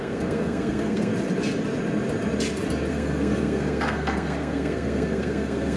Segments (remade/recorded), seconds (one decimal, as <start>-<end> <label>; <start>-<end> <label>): 0.0-1.1 remade; 1.1-2.9 recorded; 2.9-5.8 remade

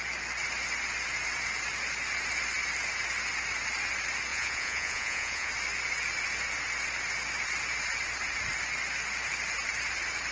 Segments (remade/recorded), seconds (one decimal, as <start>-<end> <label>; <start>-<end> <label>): 0.0-4.3 recorded; 4.3-5.5 remade; 5.5-10.3 recorded

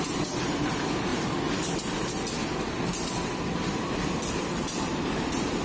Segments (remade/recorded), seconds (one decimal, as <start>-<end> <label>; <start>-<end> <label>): 0.0-5.6 recorded

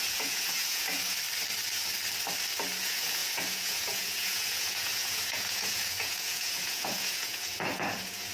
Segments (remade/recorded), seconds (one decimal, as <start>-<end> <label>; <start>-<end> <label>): 0.0-1.0 remade; 1.0-2.8 recorded; 2.8-8.3 remade

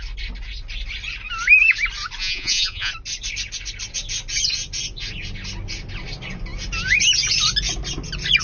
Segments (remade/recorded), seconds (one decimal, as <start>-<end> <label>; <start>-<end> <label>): 0.0-2.2 recorded; 2.2-2.9 remade; 2.9-8.4 recorded

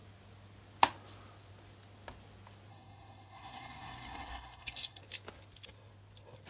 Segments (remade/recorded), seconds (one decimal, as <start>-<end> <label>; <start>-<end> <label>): 0.0-2.7 recorded; 2.7-5.0 remade; 5.0-6.5 recorded

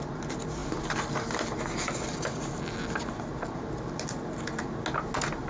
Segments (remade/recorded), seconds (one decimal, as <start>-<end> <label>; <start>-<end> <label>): 0.0-5.5 recorded

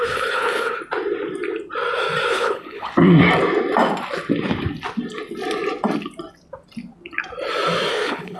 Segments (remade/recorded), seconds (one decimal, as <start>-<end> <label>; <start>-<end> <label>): 0.0-0.8 remade; 0.8-2.3 recorded; 2.3-2.9 remade; 2.9-7.9 recorded; 7.9-8.4 remade